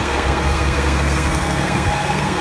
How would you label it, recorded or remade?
remade